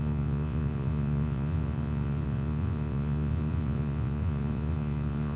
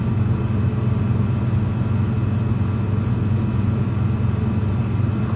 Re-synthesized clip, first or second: first